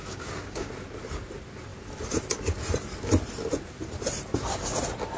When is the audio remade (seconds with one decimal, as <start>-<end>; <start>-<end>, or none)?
0.0-0.7